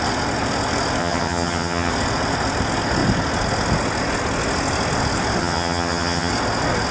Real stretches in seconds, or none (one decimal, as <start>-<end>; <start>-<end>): 0.0-1.0; 1.9-5.4; 6.3-6.9